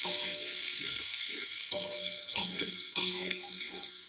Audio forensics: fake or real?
fake